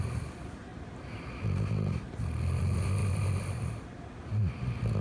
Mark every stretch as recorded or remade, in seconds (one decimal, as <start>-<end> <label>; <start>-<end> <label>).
0.0-5.0 recorded